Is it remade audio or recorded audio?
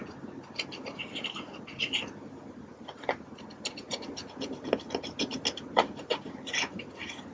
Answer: recorded